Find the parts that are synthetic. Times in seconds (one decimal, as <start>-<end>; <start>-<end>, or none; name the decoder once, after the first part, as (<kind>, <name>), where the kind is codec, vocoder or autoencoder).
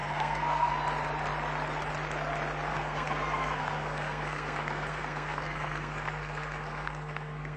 0.0-0.7 (codec, SNAC); 2.7-7.6